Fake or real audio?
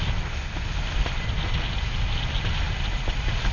real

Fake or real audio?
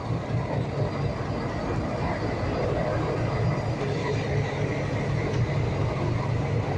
real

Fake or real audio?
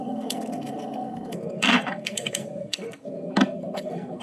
fake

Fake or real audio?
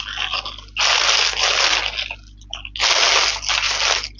real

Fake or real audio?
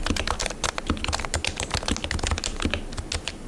real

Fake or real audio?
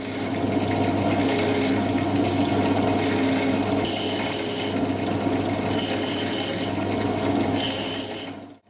real